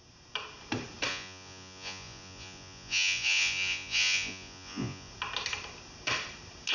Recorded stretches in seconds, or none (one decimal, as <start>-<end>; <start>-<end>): 0.0-1.1; 5.1-6.7